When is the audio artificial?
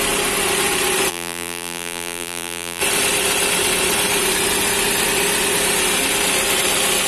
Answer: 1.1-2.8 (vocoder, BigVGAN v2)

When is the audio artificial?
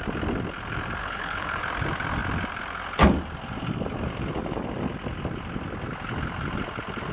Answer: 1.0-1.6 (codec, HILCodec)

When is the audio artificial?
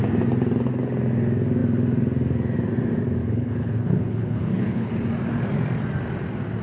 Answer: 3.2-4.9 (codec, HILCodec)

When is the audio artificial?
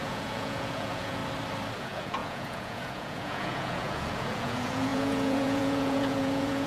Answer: 0.0-1.2 (vocoder, Vocos); 1.8-6.7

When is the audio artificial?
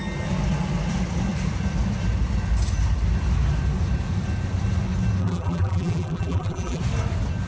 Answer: 5.2-6.8 (vocoder, BigVGAN v2)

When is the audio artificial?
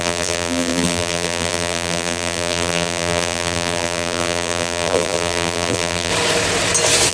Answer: 0.0-6.1 (vocoder, BigVGAN v2)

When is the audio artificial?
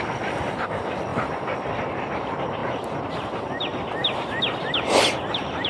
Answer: none